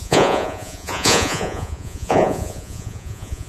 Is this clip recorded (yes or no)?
no